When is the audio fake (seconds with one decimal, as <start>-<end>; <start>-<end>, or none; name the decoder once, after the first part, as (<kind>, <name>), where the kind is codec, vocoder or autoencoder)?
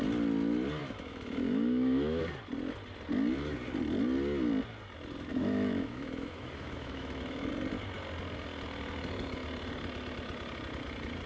0.8-2.2 (autoencoder, DAC-VAE); 5.3-7.5